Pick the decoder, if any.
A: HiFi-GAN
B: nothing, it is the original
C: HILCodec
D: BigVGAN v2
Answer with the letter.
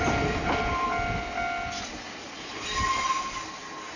B